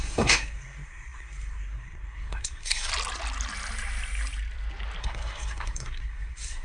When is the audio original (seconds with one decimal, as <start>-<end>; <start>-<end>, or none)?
2.9-5.0